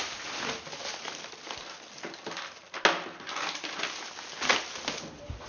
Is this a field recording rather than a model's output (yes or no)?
yes